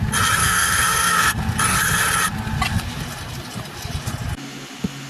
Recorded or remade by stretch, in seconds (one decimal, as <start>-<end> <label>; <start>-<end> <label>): 0.0-0.4 recorded; 0.4-1.4 remade; 1.4-5.1 recorded